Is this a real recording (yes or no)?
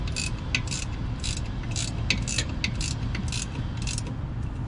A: yes